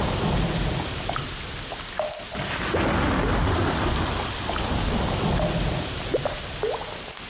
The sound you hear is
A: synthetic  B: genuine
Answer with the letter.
B